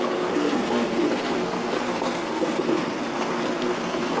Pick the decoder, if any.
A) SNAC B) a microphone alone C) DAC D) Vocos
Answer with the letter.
A